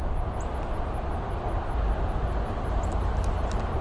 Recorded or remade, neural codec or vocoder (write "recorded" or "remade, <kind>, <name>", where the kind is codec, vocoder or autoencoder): recorded